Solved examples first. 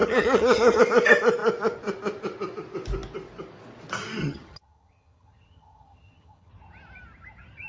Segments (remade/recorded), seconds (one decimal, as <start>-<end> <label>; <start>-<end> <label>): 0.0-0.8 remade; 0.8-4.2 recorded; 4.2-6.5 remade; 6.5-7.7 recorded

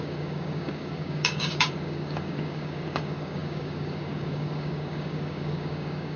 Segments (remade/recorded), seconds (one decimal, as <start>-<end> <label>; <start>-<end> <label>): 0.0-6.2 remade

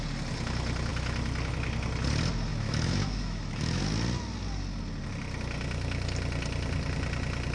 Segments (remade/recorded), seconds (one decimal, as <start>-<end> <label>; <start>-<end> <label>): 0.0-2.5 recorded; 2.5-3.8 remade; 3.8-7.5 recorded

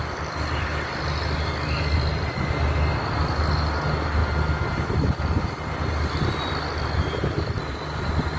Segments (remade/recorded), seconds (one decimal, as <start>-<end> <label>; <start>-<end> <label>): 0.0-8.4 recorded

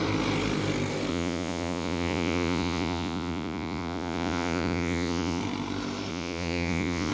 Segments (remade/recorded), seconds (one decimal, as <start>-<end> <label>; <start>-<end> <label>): 0.0-1.1 recorded; 1.1-5.4 remade; 5.4-6.1 recorded; 6.1-7.1 remade

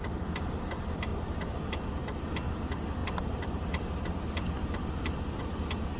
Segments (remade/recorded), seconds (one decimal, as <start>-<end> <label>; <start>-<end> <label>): 0.0-3.0 recorded; 3.0-3.8 remade; 3.8-4.6 recorded; 4.6-5.4 remade; 5.4-6.0 recorded

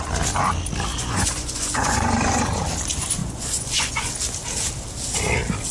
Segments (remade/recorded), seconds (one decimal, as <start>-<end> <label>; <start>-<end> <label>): 0.0-0.9 recorded; 0.9-2.5 remade; 2.5-3.2 recorded; 3.2-4.1 remade; 4.1-5.7 recorded

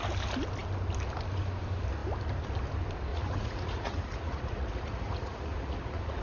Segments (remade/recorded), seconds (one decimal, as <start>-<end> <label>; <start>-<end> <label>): 0.0-3.1 recorded; 3.1-6.2 remade